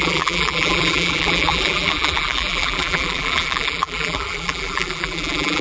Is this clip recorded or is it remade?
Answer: remade